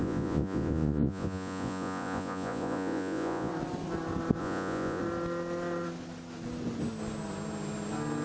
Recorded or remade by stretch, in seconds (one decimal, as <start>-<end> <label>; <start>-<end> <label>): 0.0-3.5 remade; 3.5-4.4 recorded; 4.4-5.0 remade; 5.0-8.2 recorded